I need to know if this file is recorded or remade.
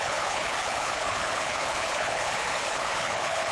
remade